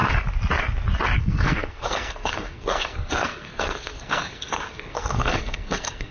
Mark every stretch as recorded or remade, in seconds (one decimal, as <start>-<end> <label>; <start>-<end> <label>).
0.0-1.2 recorded; 1.2-6.1 remade